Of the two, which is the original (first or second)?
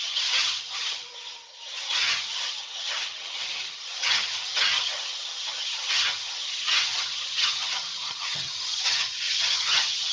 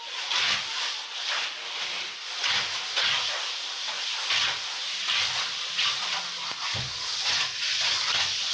second